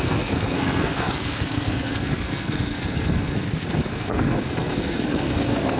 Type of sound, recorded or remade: remade